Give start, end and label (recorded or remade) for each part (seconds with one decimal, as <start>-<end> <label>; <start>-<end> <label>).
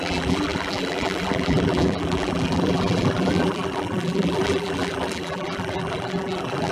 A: 0.0-6.7 remade